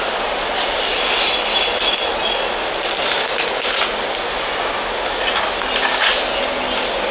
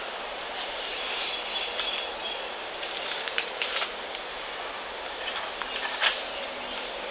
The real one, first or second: first